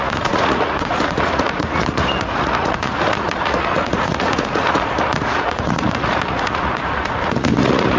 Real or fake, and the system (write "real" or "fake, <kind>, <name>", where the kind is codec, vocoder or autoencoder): fake, vocoder, Vocos